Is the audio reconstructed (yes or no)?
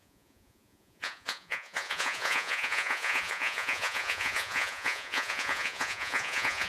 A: yes